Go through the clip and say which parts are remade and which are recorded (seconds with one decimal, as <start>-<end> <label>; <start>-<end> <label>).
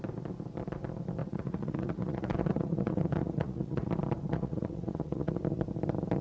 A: 0.0-1.2 recorded; 1.2-3.9 remade; 3.9-4.3 recorded; 4.3-5.4 remade; 5.4-6.2 recorded